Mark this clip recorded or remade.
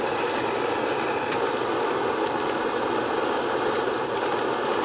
recorded